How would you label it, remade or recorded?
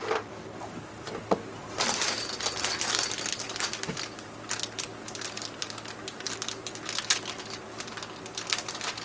recorded